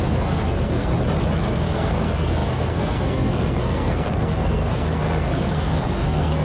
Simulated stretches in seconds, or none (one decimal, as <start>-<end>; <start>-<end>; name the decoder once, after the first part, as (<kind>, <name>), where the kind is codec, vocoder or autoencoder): 0.0-0.9 (codec, SNAC); 1.4-6.4